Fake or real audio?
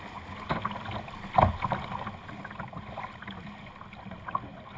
real